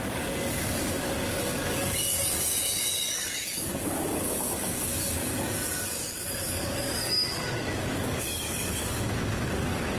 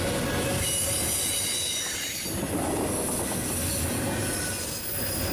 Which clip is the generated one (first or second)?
first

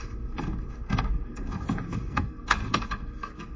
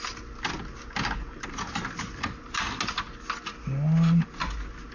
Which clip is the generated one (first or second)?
first